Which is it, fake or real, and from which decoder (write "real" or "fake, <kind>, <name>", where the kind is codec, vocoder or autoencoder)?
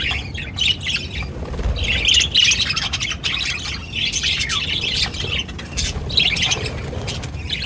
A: real